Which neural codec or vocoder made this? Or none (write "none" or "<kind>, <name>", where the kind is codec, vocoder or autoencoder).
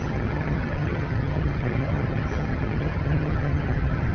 vocoder, HiFi-GAN